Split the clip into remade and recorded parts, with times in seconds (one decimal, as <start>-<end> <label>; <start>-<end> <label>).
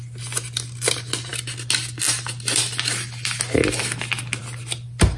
0.0-5.2 recorded